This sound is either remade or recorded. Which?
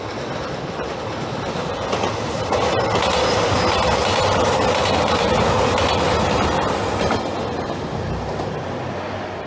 recorded